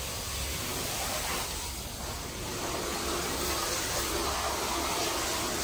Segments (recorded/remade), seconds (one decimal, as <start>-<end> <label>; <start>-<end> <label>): 0.0-0.7 recorded; 0.7-1.2 remade; 1.2-5.6 recorded